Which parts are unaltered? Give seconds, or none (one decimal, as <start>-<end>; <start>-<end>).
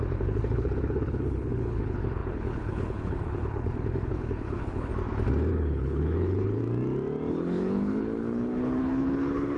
4.9-5.5; 6.6-7.3